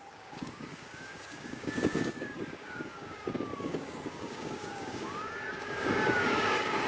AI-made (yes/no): yes